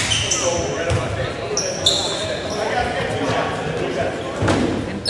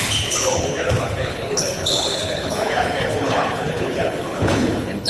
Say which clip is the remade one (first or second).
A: second